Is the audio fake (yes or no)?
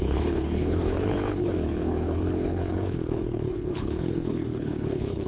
yes